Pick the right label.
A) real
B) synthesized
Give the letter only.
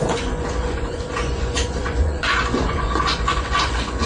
B